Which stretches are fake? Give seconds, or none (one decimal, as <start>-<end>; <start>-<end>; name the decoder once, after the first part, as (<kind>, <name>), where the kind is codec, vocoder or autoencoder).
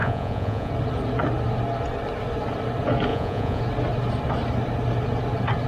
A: 0.0-0.7 (vocoder, Vocos); 3.1-3.6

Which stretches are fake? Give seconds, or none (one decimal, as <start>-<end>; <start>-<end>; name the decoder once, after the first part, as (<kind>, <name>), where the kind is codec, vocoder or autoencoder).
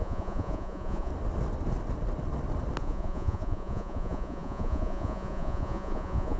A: 0.0-1.1 (vocoder, Vocos); 2.8-6.4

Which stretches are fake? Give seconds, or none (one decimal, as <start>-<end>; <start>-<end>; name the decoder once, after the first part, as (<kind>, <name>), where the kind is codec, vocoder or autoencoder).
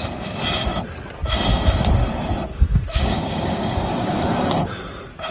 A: 2.5-4.2 (codec, DAC)